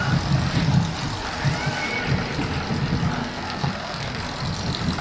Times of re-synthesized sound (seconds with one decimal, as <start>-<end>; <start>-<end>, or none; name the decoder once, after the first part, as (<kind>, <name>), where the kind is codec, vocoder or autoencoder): 3.2-4.2 (codec, SNAC)